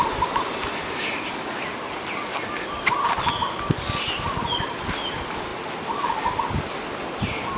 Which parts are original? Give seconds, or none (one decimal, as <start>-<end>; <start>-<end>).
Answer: 0.0-7.6